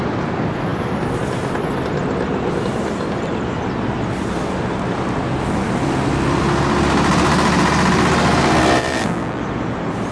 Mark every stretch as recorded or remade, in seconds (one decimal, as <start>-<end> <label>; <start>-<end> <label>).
0.0-8.8 recorded; 8.8-9.4 remade; 9.4-10.1 recorded